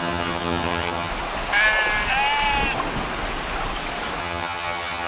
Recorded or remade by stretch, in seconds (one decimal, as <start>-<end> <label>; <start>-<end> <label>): 0.0-1.1 remade; 1.1-4.2 recorded; 4.2-5.1 remade